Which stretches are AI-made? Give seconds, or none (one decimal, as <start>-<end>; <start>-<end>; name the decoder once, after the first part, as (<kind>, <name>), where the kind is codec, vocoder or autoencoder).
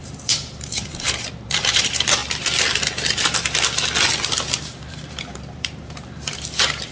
0.0-2.2 (vocoder, BigVGAN v2); 4.6-6.9